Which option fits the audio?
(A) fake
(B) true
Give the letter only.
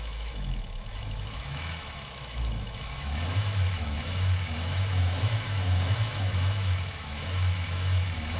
A